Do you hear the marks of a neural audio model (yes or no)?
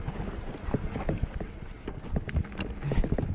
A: no